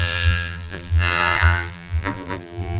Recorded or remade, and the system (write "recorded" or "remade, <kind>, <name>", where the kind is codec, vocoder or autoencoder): remade, vocoder, BigVGAN v2